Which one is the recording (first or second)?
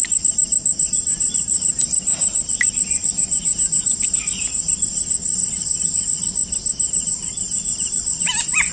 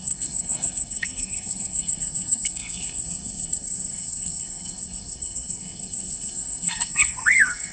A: first